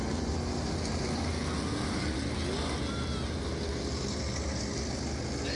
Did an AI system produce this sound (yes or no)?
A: no